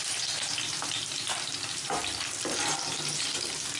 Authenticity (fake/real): fake